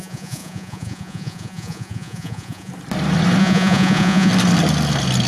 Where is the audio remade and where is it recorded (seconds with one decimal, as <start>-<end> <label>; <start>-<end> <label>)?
0.0-2.7 remade; 2.7-3.4 recorded; 3.4-4.3 remade; 4.3-5.3 recorded